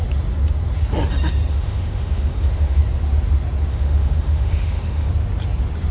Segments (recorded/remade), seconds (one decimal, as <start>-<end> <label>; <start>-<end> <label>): 0.0-1.5 recorded; 1.5-2.8 remade; 2.8-3.7 recorded; 3.7-5.1 remade; 5.1-5.9 recorded

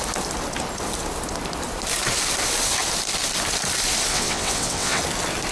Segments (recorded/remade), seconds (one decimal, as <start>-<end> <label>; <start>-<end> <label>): 0.0-4.1 recorded; 4.1-5.0 remade; 5.0-5.5 recorded

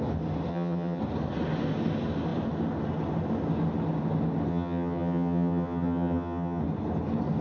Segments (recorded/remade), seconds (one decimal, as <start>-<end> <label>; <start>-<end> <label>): 0.0-0.5 recorded; 0.5-1.0 remade; 1.0-4.5 recorded; 4.5-6.6 remade; 6.6-7.4 recorded

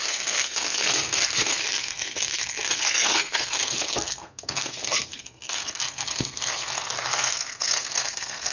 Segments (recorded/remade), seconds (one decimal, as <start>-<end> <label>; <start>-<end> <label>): 0.0-8.5 remade

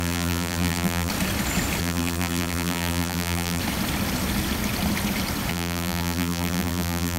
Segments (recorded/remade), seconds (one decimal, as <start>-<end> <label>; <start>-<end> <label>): 0.0-1.1 remade; 1.1-1.8 recorded; 1.8-3.6 remade; 3.6-5.5 recorded; 5.5-7.2 remade

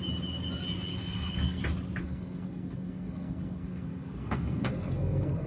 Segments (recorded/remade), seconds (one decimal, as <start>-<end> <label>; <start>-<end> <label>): 0.0-0.9 recorded; 0.9-1.6 remade; 1.6-2.0 recorded; 2.0-5.5 remade

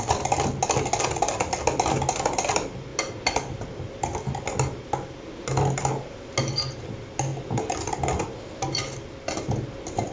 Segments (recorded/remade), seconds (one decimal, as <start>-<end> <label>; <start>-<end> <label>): 0.0-10.1 recorded